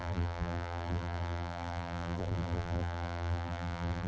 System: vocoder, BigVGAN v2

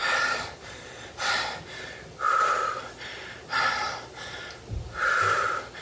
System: vocoder, BigVGAN v2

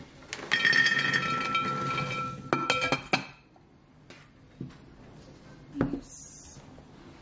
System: none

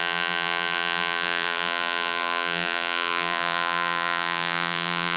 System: vocoder, BigVGAN v2